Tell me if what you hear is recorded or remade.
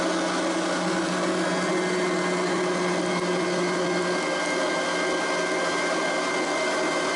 recorded